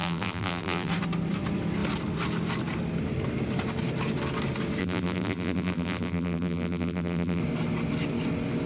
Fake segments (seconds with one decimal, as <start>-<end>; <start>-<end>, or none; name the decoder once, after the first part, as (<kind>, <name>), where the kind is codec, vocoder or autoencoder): 0.0-0.9 (vocoder, BigVGAN v2); 4.8-7.4